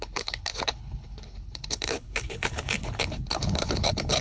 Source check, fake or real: fake